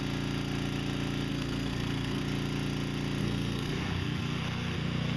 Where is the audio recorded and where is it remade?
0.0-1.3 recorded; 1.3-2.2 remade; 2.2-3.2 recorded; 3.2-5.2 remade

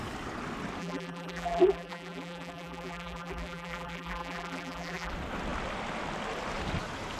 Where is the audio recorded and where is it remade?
0.0-0.8 recorded; 0.8-5.1 remade; 5.1-7.2 recorded

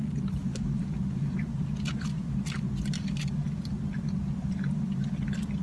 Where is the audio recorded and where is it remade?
0.0-5.6 recorded

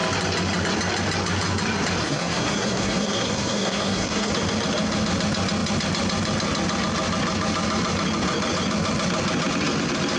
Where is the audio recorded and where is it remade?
0.0-2.0 recorded; 2.0-4.3 remade; 4.3-10.2 recorded